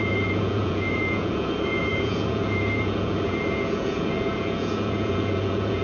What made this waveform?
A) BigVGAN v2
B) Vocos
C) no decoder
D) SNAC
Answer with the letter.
B